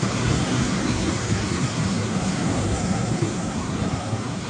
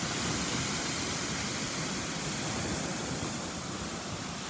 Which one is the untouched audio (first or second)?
second